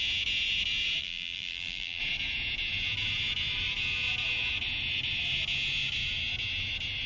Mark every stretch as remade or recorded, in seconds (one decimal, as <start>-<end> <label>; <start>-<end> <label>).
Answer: 0.0-1.0 recorded; 1.0-2.0 remade; 2.0-7.1 recorded